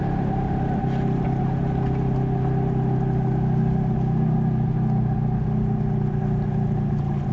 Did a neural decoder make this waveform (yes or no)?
no